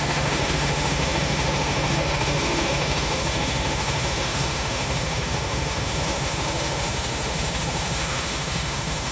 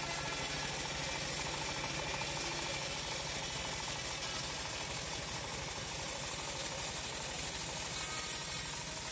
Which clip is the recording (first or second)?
second